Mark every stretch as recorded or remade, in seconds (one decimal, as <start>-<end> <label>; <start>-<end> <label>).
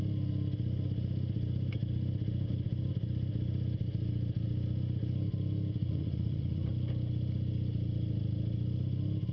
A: 0.0-5.8 recorded; 5.8-6.7 remade; 6.7-9.3 recorded